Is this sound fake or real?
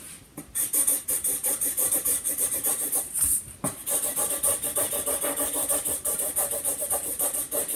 fake